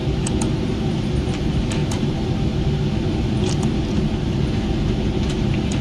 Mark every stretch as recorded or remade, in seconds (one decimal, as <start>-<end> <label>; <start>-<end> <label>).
0.0-0.8 recorded; 0.8-1.8 remade; 1.8-5.3 recorded; 5.3-5.8 remade